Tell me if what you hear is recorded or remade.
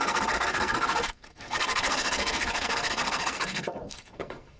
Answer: remade